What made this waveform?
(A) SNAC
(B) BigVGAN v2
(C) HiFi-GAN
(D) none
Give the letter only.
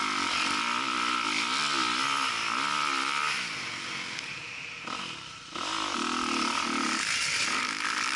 D